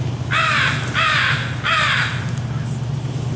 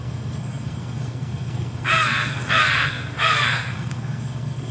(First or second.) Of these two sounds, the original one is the first